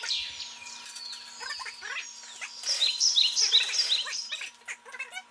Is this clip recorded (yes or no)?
yes